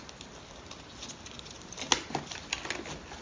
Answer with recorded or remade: recorded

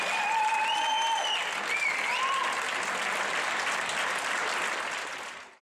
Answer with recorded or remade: recorded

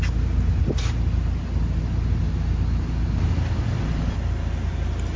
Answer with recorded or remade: recorded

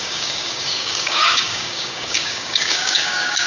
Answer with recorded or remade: remade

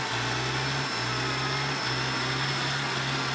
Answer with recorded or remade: recorded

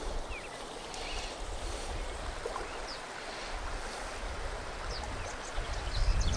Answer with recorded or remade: recorded